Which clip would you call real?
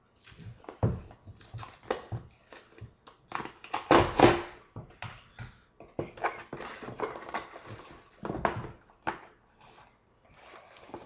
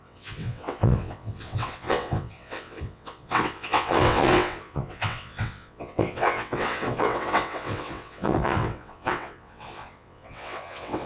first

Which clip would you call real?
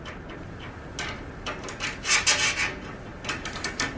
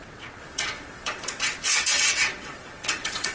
first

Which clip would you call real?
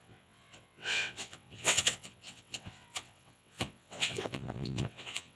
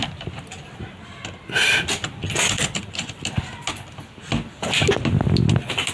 second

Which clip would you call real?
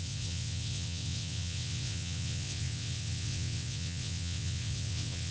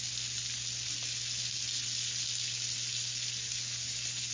second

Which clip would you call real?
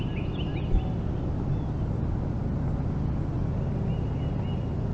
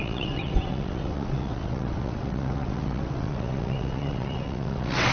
first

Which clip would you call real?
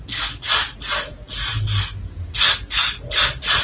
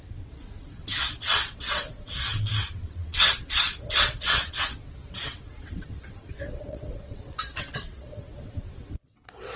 first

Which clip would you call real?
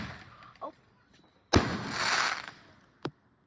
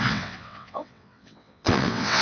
first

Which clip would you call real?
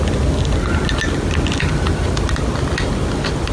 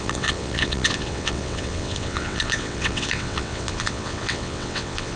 first